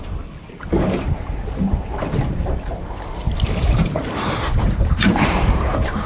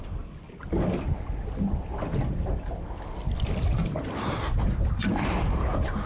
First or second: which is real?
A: second